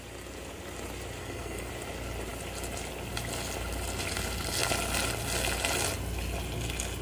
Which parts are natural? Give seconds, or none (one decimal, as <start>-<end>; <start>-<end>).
0.0-1.2; 1.7-7.0